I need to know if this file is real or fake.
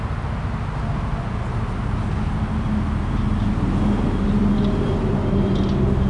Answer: real